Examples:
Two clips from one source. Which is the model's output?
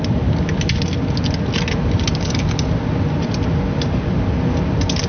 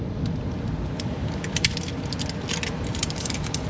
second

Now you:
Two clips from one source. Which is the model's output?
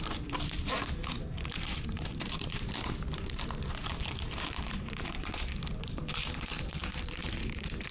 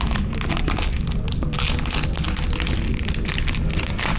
first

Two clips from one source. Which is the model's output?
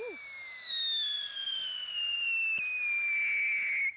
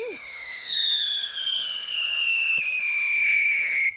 second